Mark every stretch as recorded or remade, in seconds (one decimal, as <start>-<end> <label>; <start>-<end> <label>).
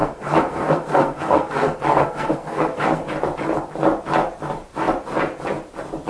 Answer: 0.0-3.0 remade; 3.0-6.1 recorded